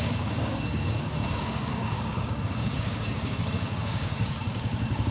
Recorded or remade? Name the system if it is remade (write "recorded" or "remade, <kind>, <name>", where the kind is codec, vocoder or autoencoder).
remade, codec, DAC